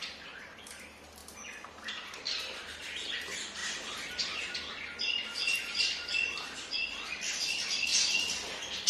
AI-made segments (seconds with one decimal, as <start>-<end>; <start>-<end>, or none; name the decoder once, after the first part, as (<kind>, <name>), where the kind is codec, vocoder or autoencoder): 0.0-1.2 (vocoder, BigVGAN v2); 1.8-7.9